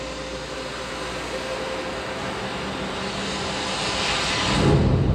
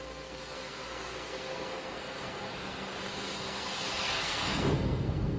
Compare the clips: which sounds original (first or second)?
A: first